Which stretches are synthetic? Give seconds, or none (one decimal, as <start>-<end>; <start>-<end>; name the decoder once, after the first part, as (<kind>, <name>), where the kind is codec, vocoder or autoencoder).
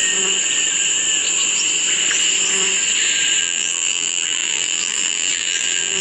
3.4-6.0 (vocoder, BigVGAN v2)